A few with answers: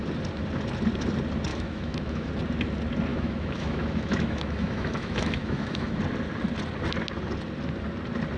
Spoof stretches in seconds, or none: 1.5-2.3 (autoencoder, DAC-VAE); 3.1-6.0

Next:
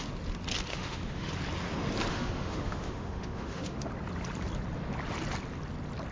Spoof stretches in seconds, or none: 0.7-1.3 (autoencoder, DAC-VAE); 2.1-3.9

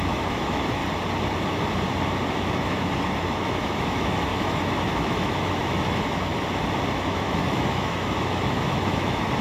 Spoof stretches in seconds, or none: 0.0-0.8 (autoencoder, DAC-VAE); 2.3-6.3; 7.0-9.4

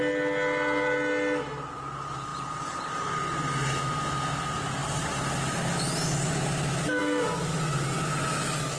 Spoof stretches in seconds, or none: none

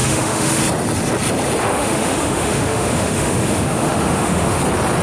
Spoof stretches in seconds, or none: 0.0-0.6 (autoencoder, DAC-VAE); 1.6-4.6